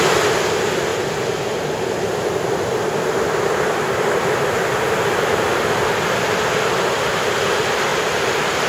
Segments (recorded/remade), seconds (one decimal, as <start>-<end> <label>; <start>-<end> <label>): 0.0-0.9 recorded; 0.9-4.8 remade; 4.8-8.7 recorded

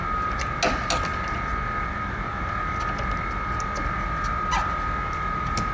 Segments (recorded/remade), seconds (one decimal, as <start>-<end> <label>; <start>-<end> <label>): 0.0-5.7 recorded

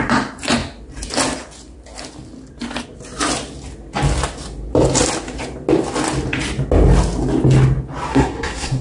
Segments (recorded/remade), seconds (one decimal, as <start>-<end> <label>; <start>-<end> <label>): 0.0-8.1 recorded; 8.1-8.8 remade

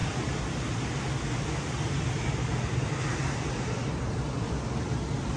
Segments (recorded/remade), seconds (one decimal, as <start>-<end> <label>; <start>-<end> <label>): 0.0-5.4 recorded

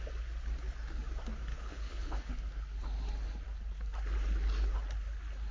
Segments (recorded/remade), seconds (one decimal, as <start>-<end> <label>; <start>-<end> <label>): 0.0-1.5 recorded; 1.5-2.3 remade; 2.3-5.5 recorded

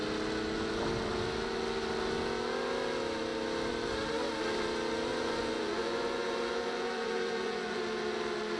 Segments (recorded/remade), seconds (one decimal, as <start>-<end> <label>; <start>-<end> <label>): 0.0-5.1 recorded; 5.1-7.8 remade; 7.8-8.6 recorded